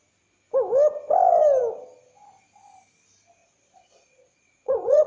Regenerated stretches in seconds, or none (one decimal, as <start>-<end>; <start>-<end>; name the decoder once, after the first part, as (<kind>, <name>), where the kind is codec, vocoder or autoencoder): 3.4-5.1 (vocoder, Vocos)